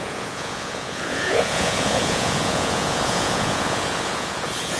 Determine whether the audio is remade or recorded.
remade